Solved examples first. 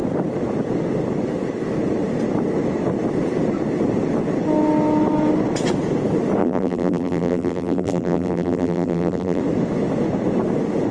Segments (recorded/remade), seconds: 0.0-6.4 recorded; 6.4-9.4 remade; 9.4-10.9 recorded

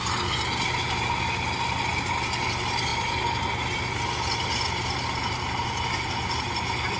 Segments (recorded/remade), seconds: 0.0-7.0 recorded

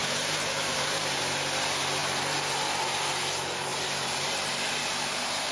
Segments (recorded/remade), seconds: 0.0-1.2 remade; 1.2-3.7 recorded; 3.7-4.5 remade; 4.5-5.5 recorded

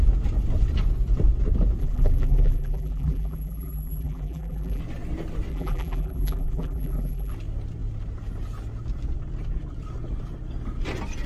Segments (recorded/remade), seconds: 0.0-1.8 recorded; 1.8-4.8 remade; 4.8-5.5 recorded; 5.5-7.3 remade; 7.3-11.3 recorded

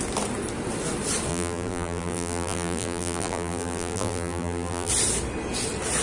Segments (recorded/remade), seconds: 0.0-1.3 recorded; 1.3-4.9 remade; 4.9-6.0 recorded